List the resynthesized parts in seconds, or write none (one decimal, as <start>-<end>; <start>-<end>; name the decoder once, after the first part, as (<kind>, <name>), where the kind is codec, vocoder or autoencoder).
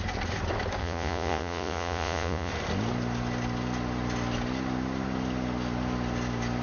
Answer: 0.8-2.5 (vocoder, Vocos)